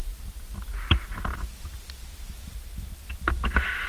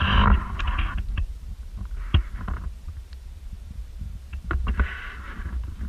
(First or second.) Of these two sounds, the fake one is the second